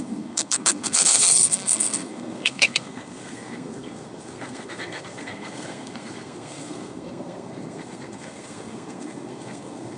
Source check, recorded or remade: remade